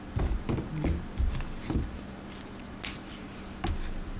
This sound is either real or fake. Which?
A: real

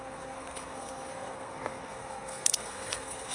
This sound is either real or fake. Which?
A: fake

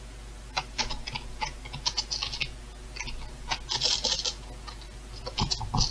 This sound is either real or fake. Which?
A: real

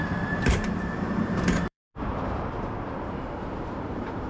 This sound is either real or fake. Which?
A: fake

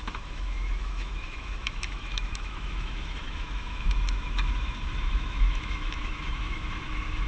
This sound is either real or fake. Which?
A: fake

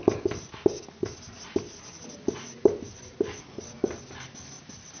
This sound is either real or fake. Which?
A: real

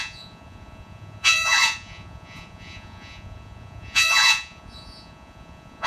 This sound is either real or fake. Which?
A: fake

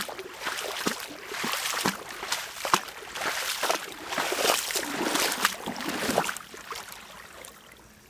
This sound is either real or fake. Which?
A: fake